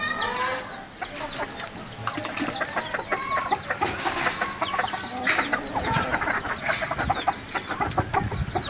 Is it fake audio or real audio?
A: real